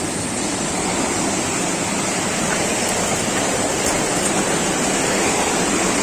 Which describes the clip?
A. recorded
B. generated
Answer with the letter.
A